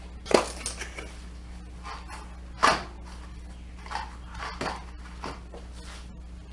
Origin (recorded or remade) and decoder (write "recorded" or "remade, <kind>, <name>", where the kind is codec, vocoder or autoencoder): recorded